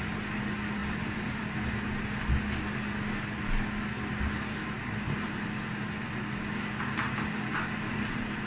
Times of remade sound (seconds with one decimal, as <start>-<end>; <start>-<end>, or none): 0.8-1.4